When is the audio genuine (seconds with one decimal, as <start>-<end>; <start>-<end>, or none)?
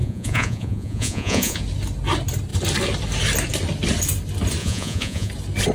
1.6-4.6; 5.3-5.7